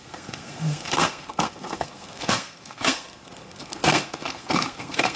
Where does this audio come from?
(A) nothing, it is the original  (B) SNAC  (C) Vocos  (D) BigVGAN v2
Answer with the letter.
B